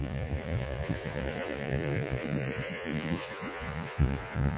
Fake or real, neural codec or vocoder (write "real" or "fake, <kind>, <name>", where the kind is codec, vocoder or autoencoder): fake, vocoder, Vocos